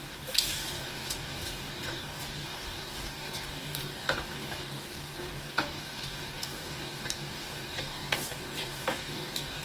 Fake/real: fake